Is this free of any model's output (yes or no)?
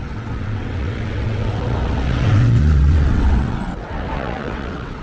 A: no